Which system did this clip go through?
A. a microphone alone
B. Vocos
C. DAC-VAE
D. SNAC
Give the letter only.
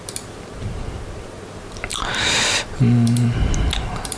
A